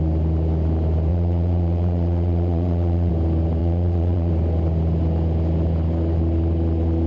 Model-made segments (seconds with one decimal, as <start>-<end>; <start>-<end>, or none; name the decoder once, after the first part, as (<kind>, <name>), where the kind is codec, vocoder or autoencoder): 1.1-3.1 (vocoder, Vocos); 3.6-4.3